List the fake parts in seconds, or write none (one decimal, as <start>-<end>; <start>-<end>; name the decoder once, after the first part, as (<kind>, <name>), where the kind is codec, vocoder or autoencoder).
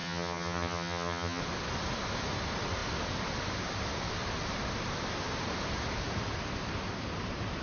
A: 0.0-1.4 (vocoder, HiFi-GAN)